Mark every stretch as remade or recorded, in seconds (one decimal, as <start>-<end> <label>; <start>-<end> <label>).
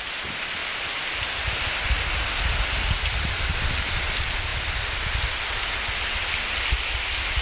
0.0-7.4 recorded